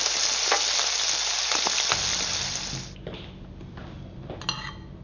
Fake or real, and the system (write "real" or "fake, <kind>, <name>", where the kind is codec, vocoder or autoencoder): real